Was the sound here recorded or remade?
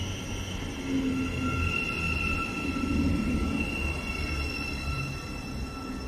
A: recorded